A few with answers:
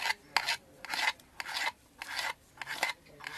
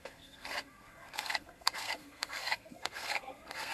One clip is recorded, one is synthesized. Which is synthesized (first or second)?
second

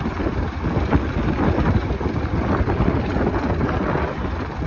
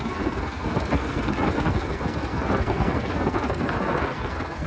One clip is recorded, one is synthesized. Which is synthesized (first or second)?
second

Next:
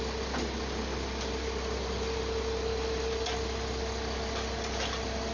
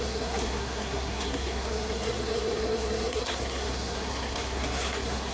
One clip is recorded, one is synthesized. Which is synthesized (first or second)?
second